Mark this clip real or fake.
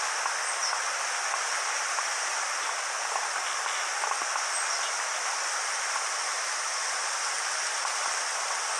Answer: real